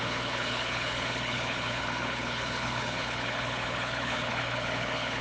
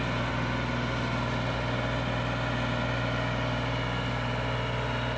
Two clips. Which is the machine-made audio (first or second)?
first